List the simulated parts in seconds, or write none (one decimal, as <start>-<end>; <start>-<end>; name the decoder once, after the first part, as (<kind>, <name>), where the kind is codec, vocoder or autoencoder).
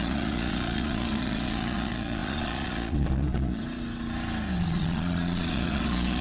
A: 0.0-3.6 (vocoder, Vocos); 4.6-6.2